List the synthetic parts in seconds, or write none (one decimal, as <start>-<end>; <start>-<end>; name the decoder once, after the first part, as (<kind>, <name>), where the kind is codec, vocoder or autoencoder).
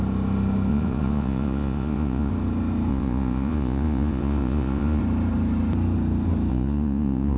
0.7-2.3 (vocoder, Vocos); 2.9-5.0; 6.5-7.4